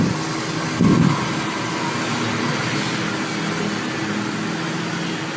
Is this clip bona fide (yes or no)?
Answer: yes